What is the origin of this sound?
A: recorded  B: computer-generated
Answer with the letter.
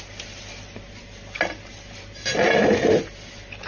A